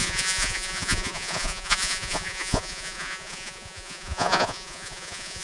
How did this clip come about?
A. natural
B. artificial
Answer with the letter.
B